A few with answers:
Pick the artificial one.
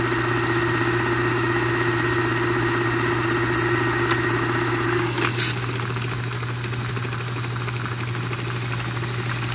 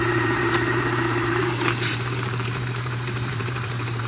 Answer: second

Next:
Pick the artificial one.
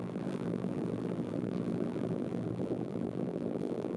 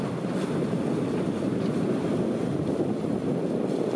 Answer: first